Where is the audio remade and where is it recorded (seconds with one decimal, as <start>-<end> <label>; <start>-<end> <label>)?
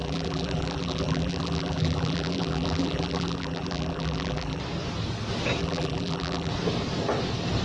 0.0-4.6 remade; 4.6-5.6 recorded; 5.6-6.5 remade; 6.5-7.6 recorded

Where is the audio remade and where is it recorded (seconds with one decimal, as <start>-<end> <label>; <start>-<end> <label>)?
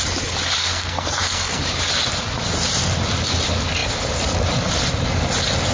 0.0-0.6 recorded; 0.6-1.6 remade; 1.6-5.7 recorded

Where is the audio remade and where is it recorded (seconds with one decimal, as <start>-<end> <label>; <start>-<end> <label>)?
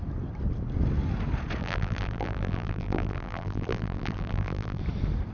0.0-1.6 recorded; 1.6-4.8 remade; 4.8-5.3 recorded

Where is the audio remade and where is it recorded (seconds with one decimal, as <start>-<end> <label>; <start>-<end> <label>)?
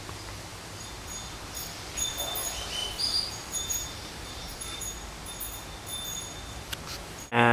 0.0-2.8 recorded; 2.8-4.8 remade; 4.8-7.5 recorded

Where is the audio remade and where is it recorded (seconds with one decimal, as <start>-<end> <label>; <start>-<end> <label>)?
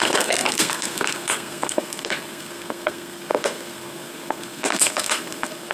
0.0-5.7 remade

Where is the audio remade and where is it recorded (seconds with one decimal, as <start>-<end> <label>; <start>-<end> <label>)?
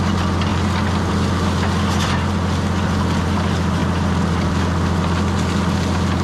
0.0-6.2 recorded